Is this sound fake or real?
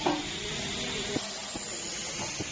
real